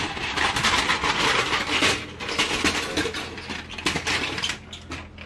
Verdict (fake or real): real